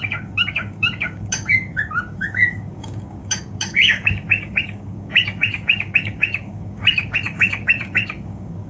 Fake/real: fake